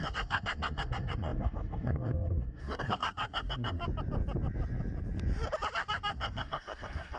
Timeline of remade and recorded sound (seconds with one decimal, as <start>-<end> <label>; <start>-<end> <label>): 0.0-3.8 remade; 3.8-6.1 recorded; 6.1-7.2 remade